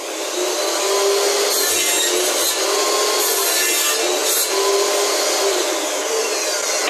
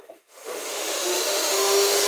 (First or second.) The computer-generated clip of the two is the second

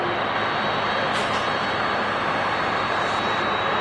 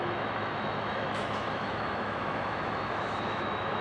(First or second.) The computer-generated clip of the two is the second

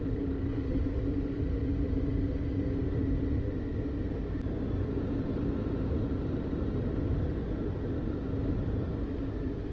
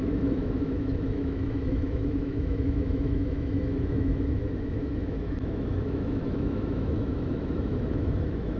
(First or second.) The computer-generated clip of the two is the second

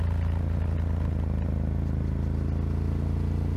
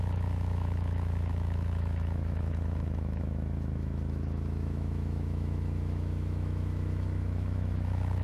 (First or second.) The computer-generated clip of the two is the second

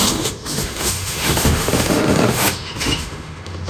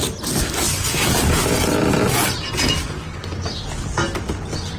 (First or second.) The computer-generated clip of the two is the first